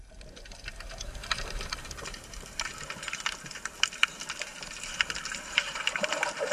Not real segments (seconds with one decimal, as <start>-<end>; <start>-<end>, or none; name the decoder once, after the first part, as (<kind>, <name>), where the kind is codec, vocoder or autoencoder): 1.2-2.7 (vocoder, BigVGAN v2); 4.5-6.5